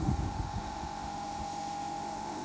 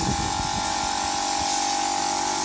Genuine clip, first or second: second